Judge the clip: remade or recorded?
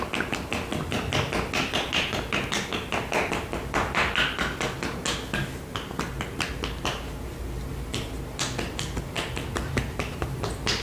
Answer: recorded